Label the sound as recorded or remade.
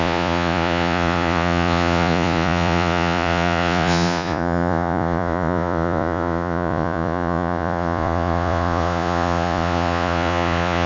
remade